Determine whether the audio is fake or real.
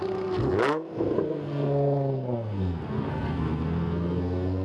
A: fake